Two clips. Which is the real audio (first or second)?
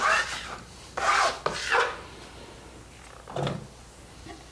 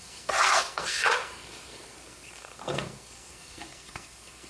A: first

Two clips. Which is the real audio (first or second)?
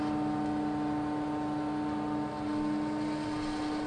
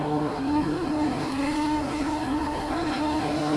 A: first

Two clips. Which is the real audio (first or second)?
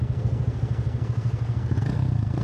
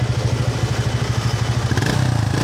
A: second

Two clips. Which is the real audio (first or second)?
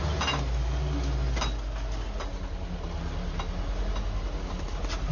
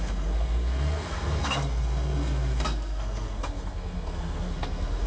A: first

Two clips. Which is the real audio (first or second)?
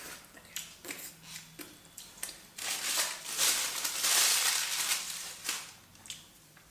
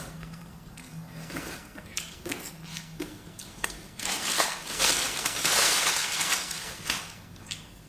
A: first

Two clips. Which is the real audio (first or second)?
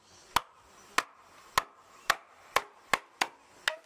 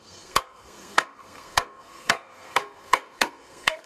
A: first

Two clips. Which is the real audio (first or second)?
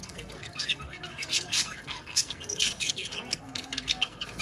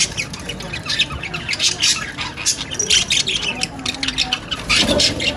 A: second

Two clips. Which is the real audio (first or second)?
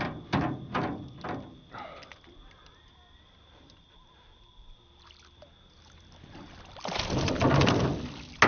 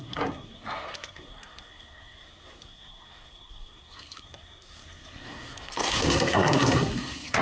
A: first